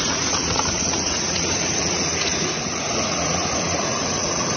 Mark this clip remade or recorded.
remade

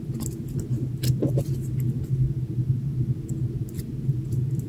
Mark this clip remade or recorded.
recorded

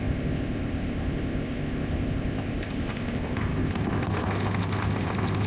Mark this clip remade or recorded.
remade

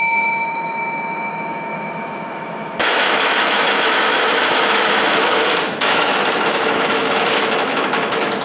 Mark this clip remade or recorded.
remade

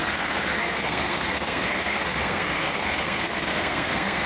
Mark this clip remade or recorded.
remade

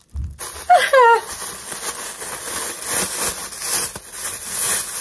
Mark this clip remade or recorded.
recorded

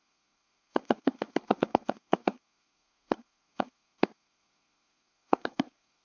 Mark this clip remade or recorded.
remade